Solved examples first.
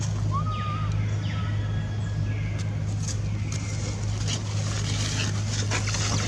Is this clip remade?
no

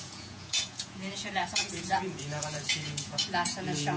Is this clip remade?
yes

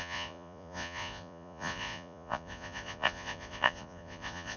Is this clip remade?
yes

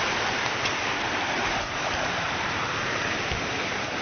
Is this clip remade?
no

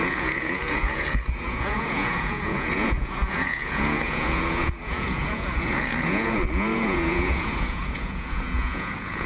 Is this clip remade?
yes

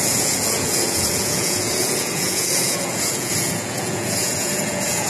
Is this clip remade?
yes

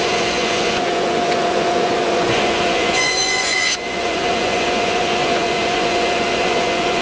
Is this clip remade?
yes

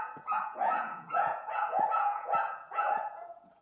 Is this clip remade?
yes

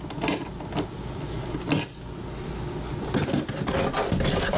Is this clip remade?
no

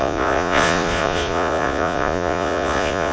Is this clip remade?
yes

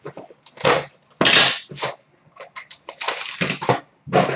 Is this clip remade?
no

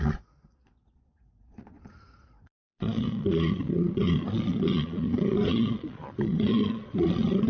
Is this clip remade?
yes